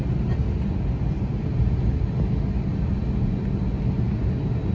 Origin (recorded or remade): recorded